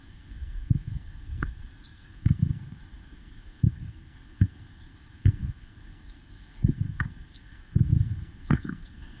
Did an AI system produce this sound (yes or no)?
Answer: yes